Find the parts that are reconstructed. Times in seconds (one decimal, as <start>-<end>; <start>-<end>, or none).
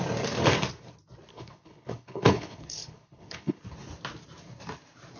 1.3-3.6